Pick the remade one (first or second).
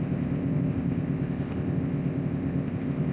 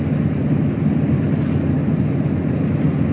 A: first